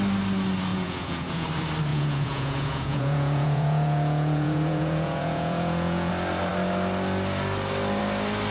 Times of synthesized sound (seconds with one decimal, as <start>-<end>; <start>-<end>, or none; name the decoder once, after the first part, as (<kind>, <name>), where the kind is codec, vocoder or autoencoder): 0.7-1.5 (vocoder, Vocos); 1.9-6.1